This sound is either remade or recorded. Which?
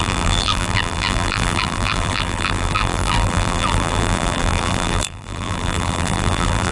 remade